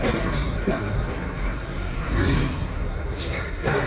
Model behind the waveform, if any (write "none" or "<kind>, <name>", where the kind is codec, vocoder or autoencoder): codec, SNAC